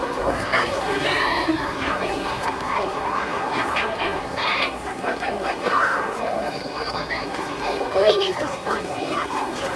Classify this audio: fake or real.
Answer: fake